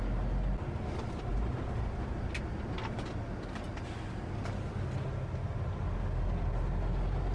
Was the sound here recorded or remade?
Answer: recorded